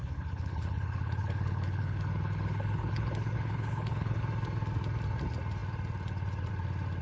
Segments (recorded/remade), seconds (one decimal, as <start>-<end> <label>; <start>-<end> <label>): 0.0-4.2 remade; 4.2-7.0 recorded